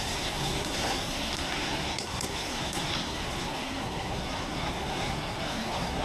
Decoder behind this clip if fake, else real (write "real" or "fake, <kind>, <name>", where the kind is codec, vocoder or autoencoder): fake, codec, SNAC